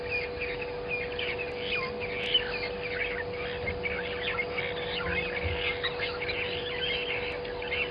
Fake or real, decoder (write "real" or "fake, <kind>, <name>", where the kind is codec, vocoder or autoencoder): real